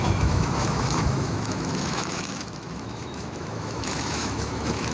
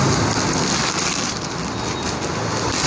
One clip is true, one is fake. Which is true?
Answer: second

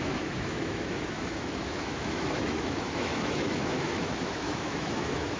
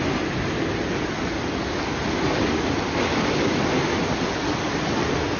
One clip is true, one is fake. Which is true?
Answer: second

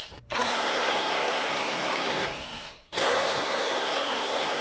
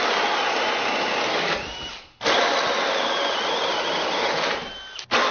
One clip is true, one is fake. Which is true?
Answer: second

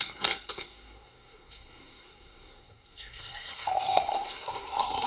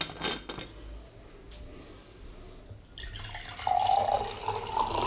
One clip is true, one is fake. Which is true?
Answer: second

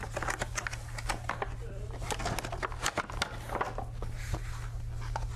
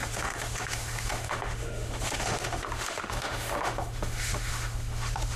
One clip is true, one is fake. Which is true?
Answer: first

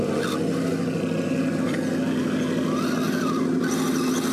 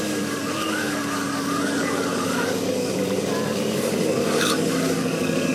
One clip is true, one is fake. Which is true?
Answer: first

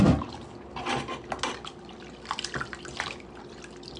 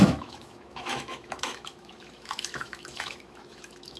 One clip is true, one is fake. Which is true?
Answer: first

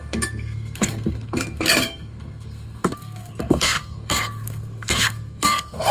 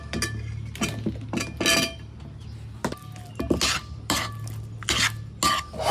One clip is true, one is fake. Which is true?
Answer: second